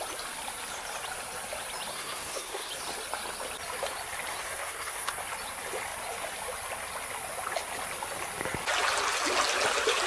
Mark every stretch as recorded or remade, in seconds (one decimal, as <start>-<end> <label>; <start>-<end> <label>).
0.0-1.9 recorded; 1.9-2.7 remade; 2.7-4.3 recorded; 4.3-5.2 remade; 5.2-10.1 recorded